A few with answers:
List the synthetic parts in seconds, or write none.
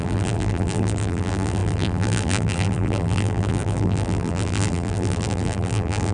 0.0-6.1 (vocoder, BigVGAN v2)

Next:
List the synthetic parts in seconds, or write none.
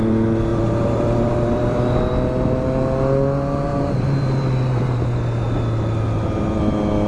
0.5-2.1 (vocoder, BigVGAN v2); 3.7-5.0